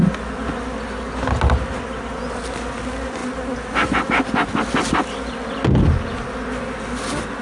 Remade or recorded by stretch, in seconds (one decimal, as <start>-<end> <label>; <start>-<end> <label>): 0.0-7.4 recorded